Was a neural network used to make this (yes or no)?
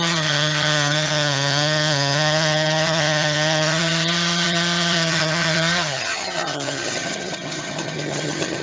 yes